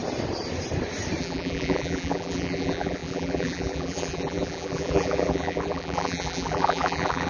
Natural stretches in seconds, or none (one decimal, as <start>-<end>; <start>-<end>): 0.0-1.2